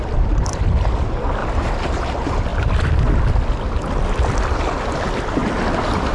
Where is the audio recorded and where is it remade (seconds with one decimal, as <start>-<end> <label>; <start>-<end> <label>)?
0.0-1.4 recorded; 1.4-2.1 remade; 2.1-6.1 recorded